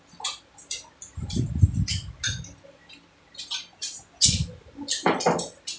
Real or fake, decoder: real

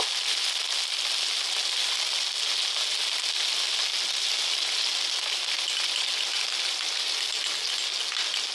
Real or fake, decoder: real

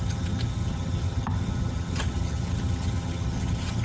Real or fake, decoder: fake, vocoder, HiFi-GAN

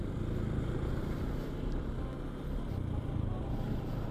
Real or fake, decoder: real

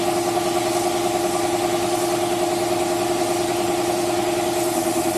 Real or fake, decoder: real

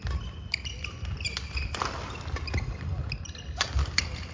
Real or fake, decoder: real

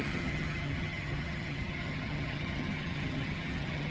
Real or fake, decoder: fake, vocoder, HiFi-GAN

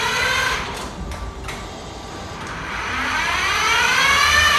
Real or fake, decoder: real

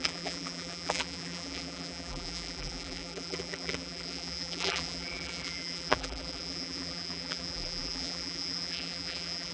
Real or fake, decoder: fake, vocoder, BigVGAN v2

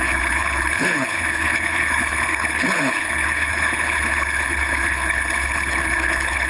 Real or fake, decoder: fake, codec, HILCodec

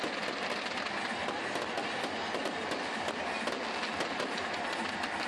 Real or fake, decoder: real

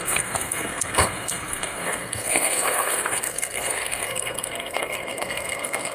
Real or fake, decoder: fake, codec, SNAC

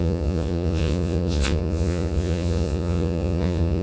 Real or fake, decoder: fake, vocoder, Vocos